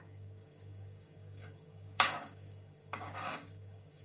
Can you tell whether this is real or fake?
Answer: fake